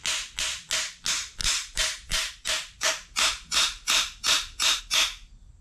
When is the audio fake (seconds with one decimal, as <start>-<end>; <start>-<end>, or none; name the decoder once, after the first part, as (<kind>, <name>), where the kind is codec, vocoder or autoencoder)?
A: 1.4-4.8 (vocoder, BigVGAN v2)